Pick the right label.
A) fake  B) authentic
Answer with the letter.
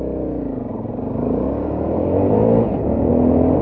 B